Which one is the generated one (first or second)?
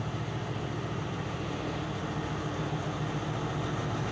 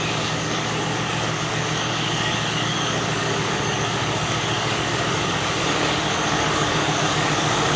second